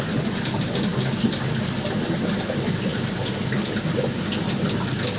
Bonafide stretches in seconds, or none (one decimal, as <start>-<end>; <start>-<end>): 0.0-5.2

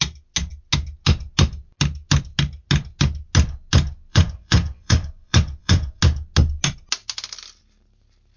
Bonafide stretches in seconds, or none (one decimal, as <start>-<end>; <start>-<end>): 0.0-4.1; 6.0-8.4